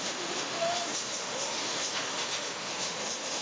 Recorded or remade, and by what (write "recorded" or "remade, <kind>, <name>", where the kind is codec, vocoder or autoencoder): remade, autoencoder, DAC-VAE